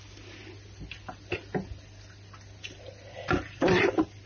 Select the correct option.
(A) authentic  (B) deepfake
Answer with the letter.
A